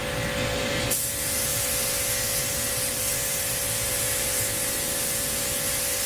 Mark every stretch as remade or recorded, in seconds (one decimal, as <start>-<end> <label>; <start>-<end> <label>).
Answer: 0.0-6.1 recorded